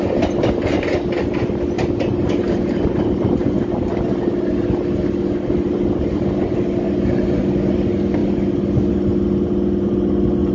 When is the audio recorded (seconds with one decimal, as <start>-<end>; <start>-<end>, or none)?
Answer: 0.0-10.5